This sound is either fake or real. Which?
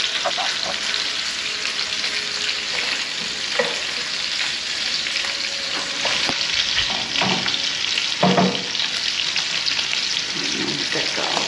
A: real